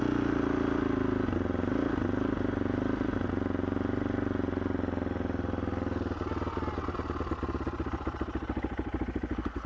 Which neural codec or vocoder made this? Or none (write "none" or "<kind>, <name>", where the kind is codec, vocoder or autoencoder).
none